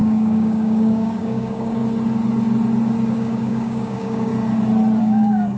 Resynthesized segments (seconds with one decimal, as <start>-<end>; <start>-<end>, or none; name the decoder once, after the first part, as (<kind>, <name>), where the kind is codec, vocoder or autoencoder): 0.0-1.8 (codec, DAC); 3.1-4.3; 5.0-5.6